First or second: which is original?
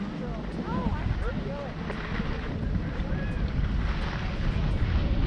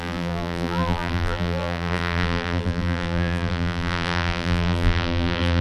first